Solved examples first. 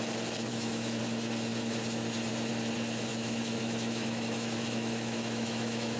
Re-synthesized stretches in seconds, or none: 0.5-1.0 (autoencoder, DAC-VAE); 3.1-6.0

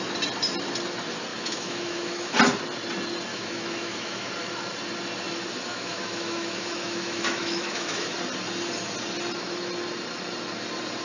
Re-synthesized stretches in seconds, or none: 1.3-2.3 (autoencoder, DAC-VAE); 3.3-4.3; 5.7-8.1

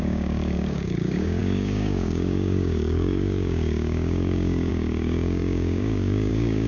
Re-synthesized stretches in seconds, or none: 0.0-6.7 (codec, DAC)

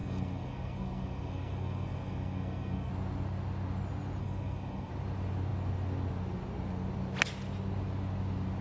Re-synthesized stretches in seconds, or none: 0.0-2.9 (codec, SNAC); 4.2-4.9

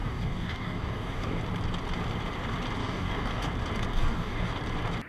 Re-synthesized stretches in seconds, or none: 0.0-1.4 (codec, DAC); 2.8-3.5; 3.9-4.5

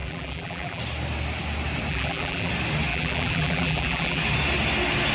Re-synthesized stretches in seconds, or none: 0.0-0.8 (vocoder, BigVGAN v2); 1.9-2.5; 2.9-4.2

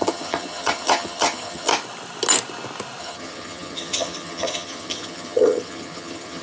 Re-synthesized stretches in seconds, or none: 0.0-1.7 (vocoder, HiFi-GAN); 3.0-6.4